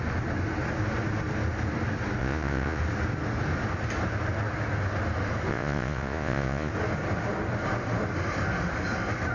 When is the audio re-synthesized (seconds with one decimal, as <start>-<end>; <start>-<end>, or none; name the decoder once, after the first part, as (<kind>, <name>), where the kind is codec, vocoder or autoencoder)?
2.2-2.8 (vocoder, Vocos); 5.5-6.7

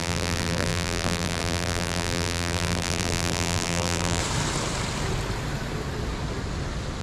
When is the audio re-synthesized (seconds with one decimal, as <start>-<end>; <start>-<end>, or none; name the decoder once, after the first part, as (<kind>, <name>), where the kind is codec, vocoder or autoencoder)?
0.0-4.2 (vocoder, BigVGAN v2)

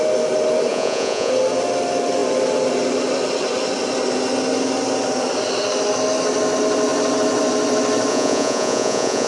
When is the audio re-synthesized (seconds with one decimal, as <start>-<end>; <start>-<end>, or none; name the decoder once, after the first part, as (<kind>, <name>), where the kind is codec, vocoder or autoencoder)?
0.7-1.3 (vocoder, Vocos); 8.1-9.3